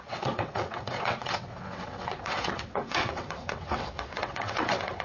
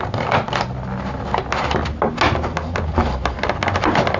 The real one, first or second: second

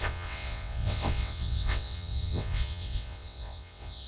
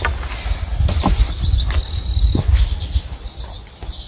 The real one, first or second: second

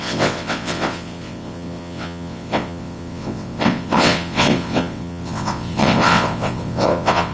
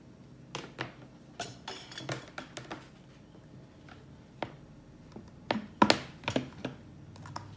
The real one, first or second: second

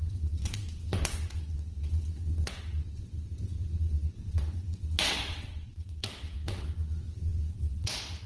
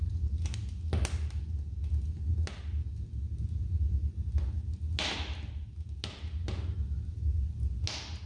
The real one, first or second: second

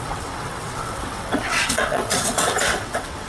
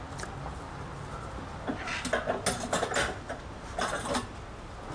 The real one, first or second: second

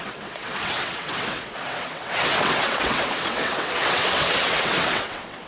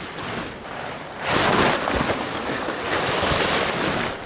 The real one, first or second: second